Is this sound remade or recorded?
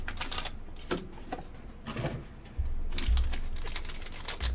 recorded